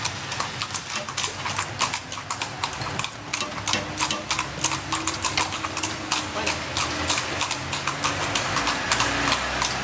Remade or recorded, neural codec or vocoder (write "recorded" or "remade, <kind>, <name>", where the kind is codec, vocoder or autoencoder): recorded